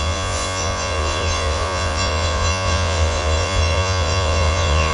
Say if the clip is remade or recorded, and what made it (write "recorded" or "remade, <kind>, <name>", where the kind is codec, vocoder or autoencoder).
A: remade, vocoder, Vocos